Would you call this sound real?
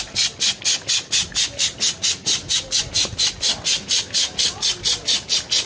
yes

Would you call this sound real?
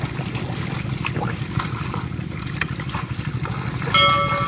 yes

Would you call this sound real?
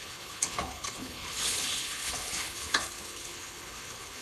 no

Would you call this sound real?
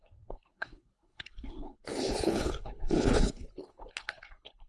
no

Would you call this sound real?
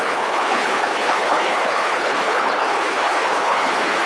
no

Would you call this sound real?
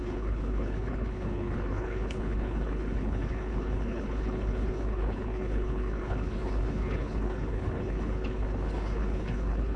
no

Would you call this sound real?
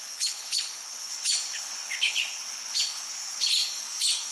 no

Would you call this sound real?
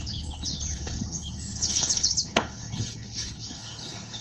no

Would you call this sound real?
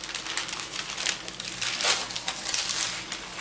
yes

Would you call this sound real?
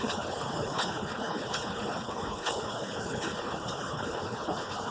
no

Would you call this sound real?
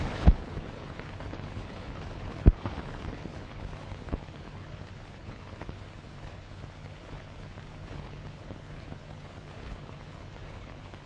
no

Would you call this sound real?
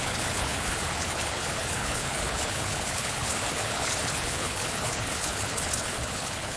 no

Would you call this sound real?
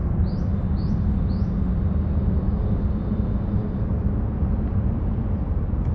yes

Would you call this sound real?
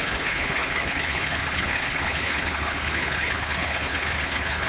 no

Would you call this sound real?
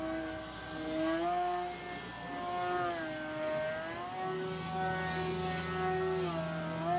yes